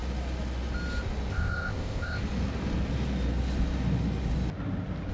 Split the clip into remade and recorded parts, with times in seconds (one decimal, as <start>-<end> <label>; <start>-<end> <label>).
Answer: 0.0-1.3 recorded; 1.3-2.2 remade; 2.2-5.1 recorded